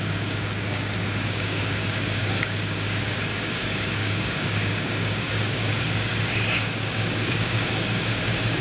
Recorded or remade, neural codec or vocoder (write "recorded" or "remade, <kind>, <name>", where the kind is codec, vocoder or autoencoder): remade, codec, DAC